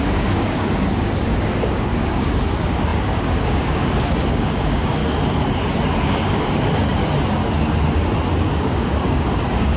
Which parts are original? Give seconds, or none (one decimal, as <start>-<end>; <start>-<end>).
5.0-6.0; 7.0-8.5